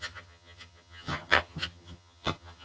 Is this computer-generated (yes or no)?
yes